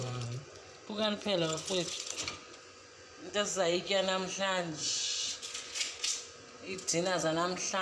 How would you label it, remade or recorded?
remade